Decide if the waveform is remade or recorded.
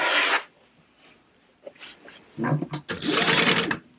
recorded